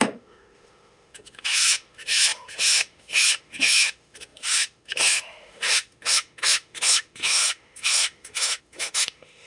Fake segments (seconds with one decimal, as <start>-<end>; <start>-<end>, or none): 0.0-9.5